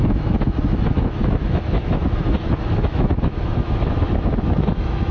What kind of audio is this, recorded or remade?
remade